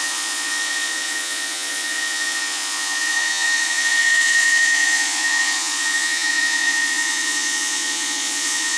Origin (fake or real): fake